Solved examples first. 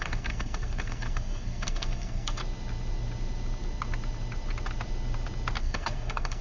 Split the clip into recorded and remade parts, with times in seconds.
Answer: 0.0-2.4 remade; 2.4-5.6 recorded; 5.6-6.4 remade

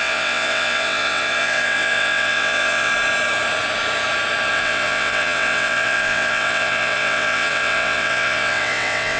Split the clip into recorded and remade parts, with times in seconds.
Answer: 0.0-2.9 remade; 2.9-4.5 recorded; 4.5-9.2 remade

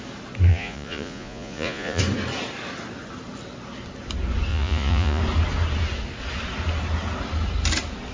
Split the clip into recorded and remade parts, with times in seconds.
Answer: 0.0-0.5 recorded; 0.5-2.0 remade; 2.0-4.5 recorded; 4.5-5.2 remade; 5.2-8.1 recorded

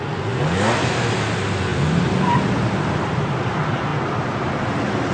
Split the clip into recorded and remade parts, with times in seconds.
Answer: 0.0-5.1 recorded

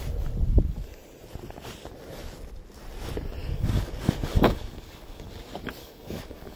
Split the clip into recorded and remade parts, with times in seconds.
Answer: 0.0-3.4 recorded; 3.4-5.3 remade; 5.3-5.8 recorded; 5.8-6.6 remade